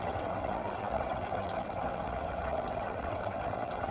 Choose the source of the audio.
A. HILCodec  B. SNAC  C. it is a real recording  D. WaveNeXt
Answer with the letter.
D